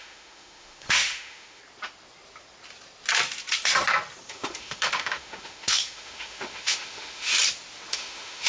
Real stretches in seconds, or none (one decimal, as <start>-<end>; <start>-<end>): 1.6-4.3; 7.3-7.9